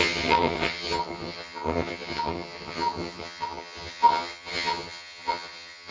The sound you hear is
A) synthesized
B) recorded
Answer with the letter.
A